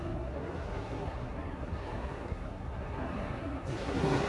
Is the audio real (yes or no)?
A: no